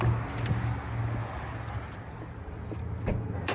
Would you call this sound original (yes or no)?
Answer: yes